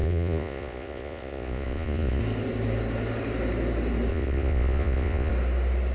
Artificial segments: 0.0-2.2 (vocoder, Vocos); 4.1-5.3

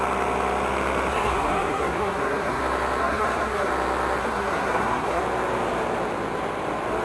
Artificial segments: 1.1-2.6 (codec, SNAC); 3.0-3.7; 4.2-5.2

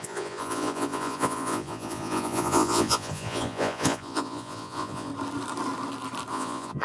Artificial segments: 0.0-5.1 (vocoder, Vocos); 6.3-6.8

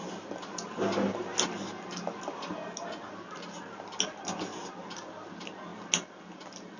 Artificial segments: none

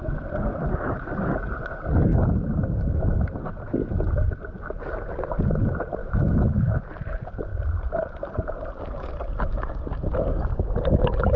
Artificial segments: 6.0-6.6 (autoencoder, DAC-VAE)